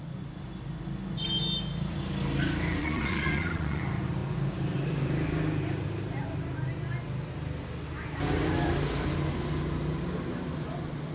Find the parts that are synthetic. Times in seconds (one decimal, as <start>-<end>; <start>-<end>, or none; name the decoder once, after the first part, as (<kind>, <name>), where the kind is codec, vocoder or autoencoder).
2.8-3.8 (vocoder, Vocos)